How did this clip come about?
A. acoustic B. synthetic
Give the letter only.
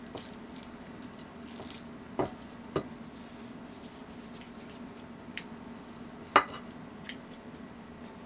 A